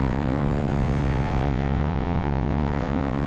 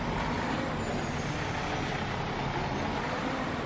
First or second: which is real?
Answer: second